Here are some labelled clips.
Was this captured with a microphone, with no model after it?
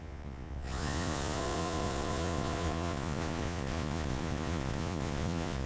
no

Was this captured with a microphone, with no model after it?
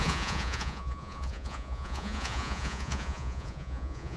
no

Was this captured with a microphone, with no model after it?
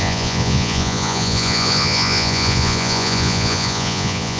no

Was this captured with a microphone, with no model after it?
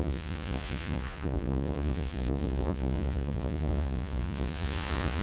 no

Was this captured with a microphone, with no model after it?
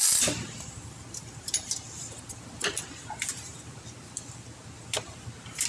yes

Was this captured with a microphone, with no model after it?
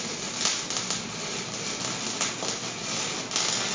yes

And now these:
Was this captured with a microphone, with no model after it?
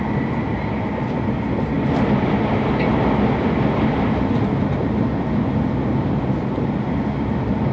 yes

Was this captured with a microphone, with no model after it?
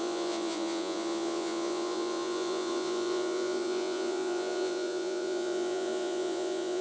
no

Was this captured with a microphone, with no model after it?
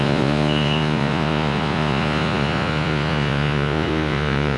no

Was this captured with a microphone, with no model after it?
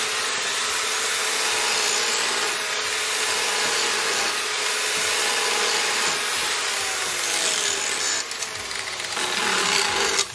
yes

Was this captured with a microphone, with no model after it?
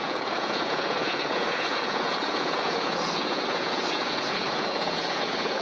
no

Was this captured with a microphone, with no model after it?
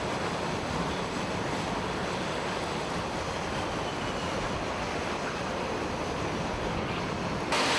yes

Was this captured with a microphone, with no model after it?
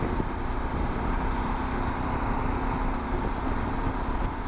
yes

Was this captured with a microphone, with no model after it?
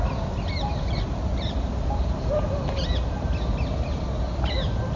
yes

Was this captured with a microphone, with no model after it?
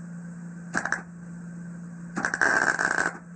yes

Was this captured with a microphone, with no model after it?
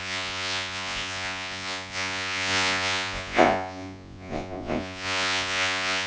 no